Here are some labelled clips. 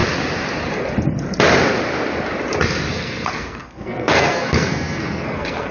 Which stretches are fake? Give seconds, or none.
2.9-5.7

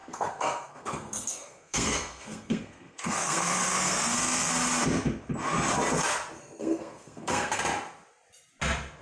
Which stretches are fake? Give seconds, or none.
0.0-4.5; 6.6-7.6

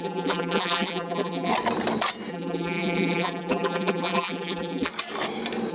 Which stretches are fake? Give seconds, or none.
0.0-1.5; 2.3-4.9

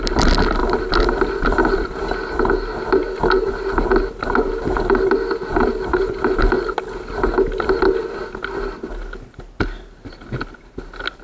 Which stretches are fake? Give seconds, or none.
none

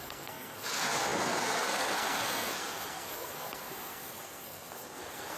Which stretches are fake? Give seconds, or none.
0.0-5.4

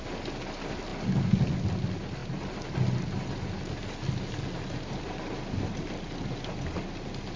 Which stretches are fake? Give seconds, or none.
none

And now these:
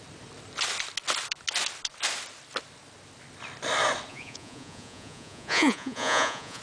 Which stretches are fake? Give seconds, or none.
4.1-6.6

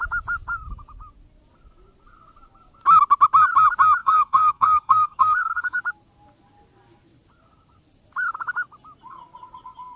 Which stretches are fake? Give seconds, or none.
4.0-5.8